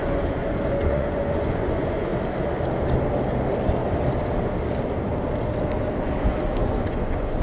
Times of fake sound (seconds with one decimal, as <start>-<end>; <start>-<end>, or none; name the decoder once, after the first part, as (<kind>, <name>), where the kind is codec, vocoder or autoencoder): 0.0-2.1 (vocoder, Vocos); 6.5-7.4